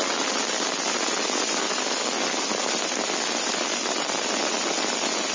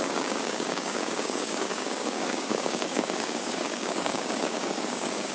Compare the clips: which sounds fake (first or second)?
second